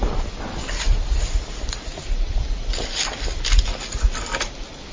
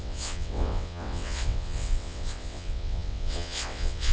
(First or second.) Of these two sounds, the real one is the first